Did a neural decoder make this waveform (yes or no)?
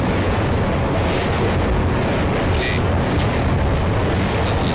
no